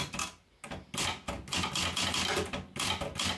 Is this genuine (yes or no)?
yes